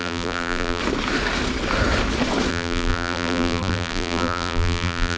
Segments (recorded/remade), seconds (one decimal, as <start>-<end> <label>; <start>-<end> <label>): 0.0-0.8 remade; 0.8-2.5 recorded; 2.5-5.2 remade